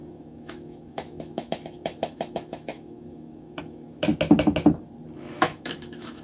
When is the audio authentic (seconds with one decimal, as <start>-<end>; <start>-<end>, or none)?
4.1-5.2